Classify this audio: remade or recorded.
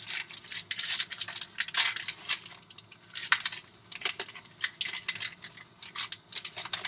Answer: recorded